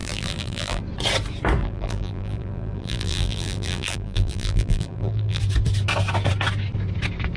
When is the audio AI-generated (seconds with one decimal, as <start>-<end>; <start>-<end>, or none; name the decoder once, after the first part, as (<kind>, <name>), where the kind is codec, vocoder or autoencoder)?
0.0-0.8 (vocoder, BigVGAN v2); 1.6-5.4